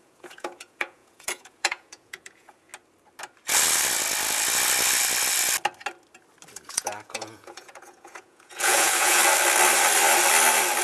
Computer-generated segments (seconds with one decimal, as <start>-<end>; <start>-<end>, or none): 0.0-2.7; 6.7-9.2